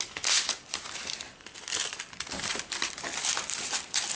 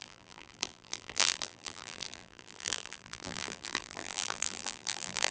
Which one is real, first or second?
first